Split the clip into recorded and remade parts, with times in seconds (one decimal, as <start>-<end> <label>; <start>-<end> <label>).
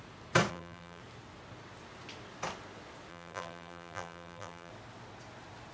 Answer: 0.0-0.5 recorded; 0.5-1.0 remade; 1.0-3.1 recorded; 3.1-4.7 remade; 4.7-5.7 recorded